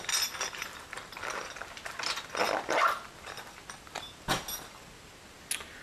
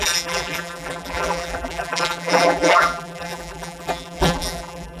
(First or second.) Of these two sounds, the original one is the first